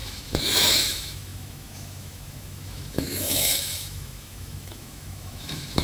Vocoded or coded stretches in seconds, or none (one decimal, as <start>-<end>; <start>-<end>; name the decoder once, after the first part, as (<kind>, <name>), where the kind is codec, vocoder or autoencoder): 0.0-5.8 (autoencoder, DAC-VAE)